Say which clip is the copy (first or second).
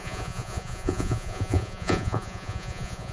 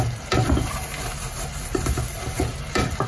first